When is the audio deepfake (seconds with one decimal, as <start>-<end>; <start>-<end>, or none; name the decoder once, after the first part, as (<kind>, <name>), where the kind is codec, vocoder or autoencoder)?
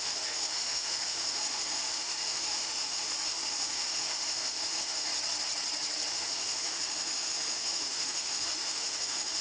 0.0-5.1 (autoencoder, DAC-VAE); 6.1-9.4